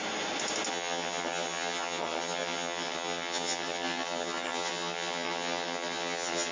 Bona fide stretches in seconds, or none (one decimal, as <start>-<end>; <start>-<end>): 0.0-0.7